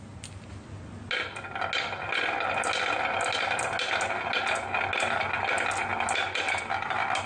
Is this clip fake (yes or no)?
no